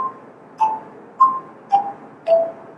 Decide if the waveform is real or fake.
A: real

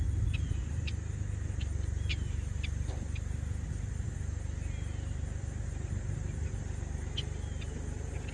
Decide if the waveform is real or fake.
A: real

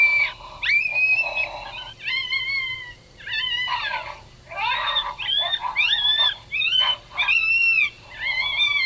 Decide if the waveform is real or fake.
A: real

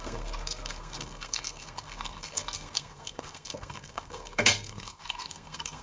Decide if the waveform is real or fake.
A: fake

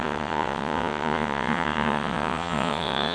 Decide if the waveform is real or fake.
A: fake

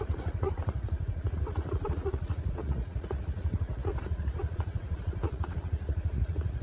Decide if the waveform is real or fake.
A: fake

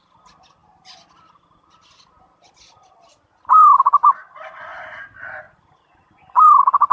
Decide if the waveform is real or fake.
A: real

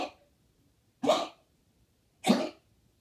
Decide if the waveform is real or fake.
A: real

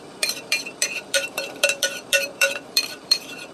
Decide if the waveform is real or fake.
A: fake